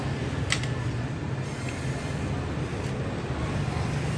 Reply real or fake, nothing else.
real